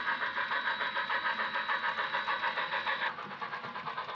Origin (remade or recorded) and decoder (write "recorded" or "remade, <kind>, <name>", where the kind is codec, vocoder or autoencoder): recorded